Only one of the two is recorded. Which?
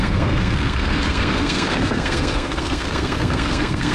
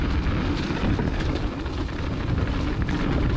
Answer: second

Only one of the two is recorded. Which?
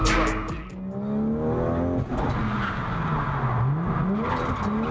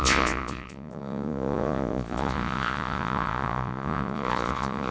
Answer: first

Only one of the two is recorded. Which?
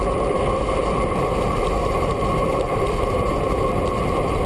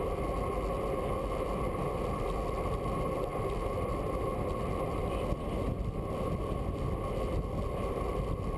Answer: second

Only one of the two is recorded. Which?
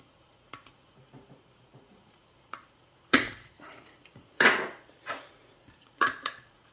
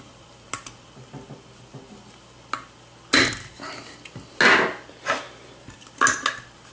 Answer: second